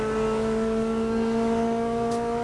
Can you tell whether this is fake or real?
fake